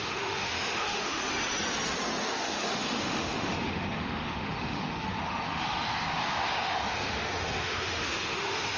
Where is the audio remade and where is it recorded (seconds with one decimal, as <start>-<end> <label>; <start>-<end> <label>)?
0.0-1.2 remade; 1.2-2.2 recorded; 2.2-8.8 remade